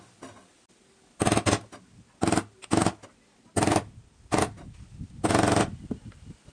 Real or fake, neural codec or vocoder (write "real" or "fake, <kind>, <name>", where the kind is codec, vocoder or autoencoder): real